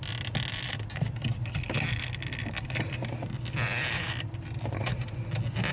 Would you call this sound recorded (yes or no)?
yes